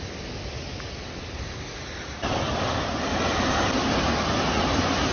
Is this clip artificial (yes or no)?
no